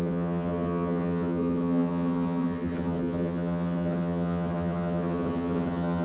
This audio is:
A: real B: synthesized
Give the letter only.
B